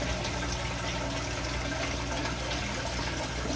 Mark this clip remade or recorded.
recorded